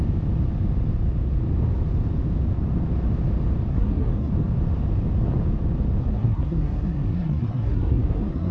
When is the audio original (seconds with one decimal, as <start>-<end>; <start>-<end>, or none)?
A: 0.0-3.7; 4.3-6.0